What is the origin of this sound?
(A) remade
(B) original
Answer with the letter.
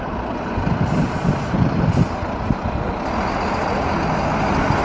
B